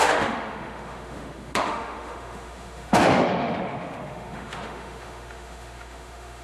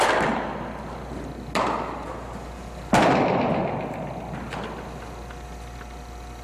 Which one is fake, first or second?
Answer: first